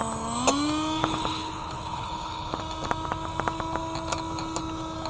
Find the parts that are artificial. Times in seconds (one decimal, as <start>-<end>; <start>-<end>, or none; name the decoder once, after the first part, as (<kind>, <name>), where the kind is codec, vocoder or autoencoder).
1.0-2.6 (codec, HILCodec)